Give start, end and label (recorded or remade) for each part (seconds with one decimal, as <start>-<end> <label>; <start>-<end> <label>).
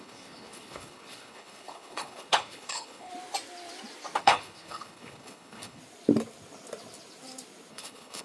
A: 0.0-3.1 remade; 3.1-4.2 recorded; 4.2-5.8 remade; 5.8-7.7 recorded; 7.7-8.2 remade